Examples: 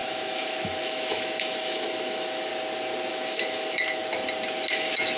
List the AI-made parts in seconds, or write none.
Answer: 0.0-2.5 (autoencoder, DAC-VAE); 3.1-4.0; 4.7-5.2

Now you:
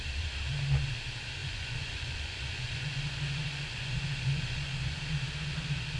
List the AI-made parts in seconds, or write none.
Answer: 1.4-5.0 (vocoder, Vocos)

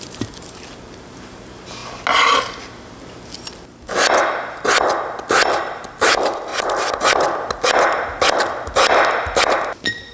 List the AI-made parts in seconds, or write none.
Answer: 0.0-1.8 (vocoder, BigVGAN v2); 5.6-6.5; 9.5-10.1